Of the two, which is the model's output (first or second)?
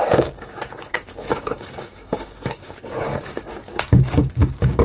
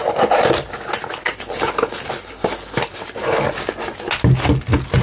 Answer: first